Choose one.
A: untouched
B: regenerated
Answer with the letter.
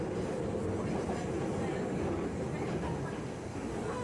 A